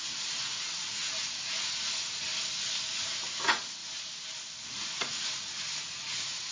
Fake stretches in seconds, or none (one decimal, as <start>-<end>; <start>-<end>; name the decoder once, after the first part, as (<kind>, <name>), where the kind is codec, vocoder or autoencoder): 0.0-2.3 (vocoder, Vocos); 2.8-3.8; 5.0-6.5